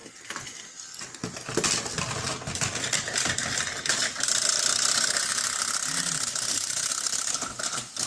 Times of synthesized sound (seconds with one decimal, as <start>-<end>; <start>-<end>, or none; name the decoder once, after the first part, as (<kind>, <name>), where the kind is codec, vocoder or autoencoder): none

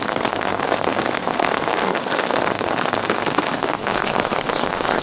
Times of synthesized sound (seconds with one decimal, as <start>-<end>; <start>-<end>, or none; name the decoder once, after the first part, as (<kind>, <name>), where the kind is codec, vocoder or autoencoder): 0.0-5.0 (codec, SNAC)

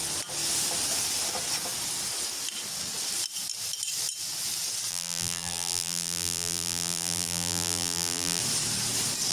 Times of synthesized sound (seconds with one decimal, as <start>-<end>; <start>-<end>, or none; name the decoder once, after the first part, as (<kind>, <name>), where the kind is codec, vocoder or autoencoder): 4.9-8.4 (vocoder, BigVGAN v2)

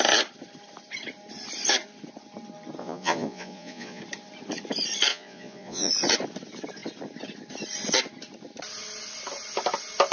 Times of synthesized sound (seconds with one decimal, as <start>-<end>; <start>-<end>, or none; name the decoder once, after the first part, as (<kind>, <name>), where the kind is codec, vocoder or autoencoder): 2.8-4.0 (vocoder, Vocos); 5.1-5.9